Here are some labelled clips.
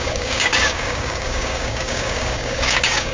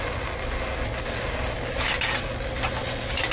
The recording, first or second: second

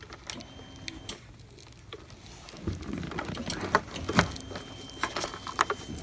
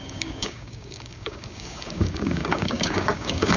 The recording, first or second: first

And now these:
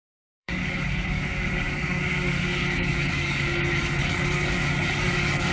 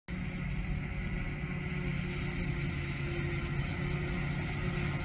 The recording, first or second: second